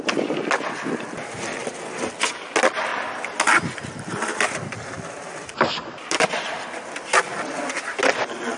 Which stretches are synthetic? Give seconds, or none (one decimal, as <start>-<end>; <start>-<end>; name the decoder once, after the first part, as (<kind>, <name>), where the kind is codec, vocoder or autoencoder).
none